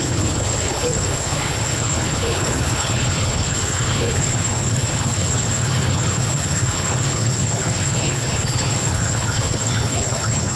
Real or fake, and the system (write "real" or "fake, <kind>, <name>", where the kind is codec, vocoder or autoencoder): fake, codec, HILCodec